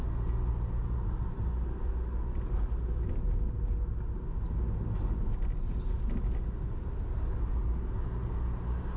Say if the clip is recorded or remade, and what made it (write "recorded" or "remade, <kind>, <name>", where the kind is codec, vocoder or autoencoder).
recorded